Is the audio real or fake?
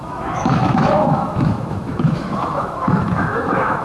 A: fake